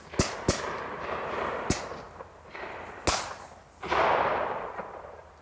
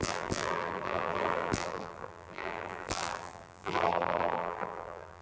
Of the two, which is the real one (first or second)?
first